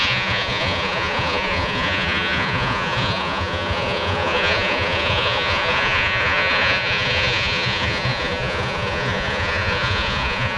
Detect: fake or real fake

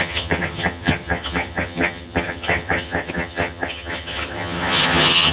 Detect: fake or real fake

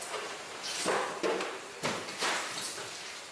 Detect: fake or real fake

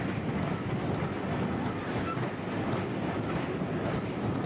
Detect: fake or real real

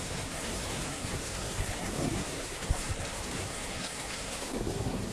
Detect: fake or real fake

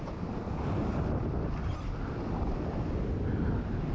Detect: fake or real real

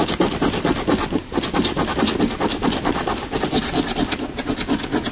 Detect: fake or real real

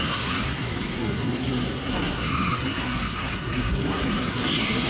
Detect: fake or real fake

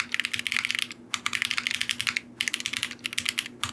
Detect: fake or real real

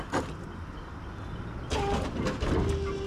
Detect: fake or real real